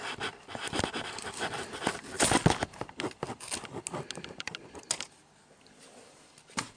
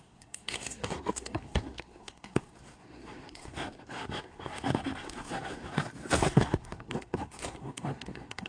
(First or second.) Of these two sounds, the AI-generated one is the second